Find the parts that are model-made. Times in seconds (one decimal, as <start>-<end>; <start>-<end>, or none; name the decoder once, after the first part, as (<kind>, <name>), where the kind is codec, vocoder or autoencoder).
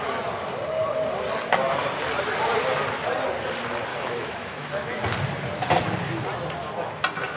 3.9-5.0 (autoencoder, DAC-VAE)